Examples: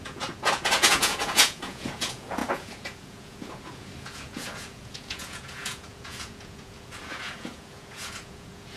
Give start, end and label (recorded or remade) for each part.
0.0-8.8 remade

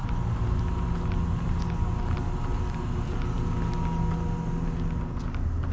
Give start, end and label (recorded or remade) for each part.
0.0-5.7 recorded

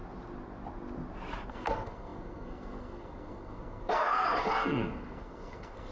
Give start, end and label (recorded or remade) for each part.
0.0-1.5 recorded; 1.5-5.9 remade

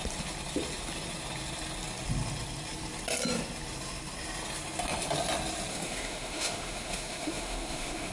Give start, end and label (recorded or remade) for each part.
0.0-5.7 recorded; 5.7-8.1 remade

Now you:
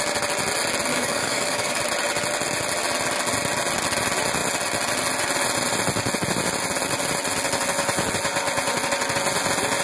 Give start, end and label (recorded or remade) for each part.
0.0-0.9 recorded; 0.9-1.8 remade; 1.8-9.8 recorded

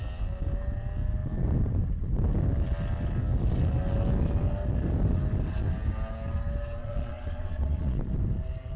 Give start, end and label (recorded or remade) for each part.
0.0-6.8 recorded; 6.8-8.0 remade; 8.0-8.8 recorded

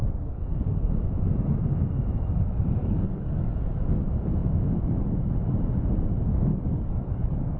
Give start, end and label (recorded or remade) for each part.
0.0-0.9 remade; 0.9-2.8 recorded; 2.8-3.5 remade; 3.5-6.5 recorded; 6.5-7.6 remade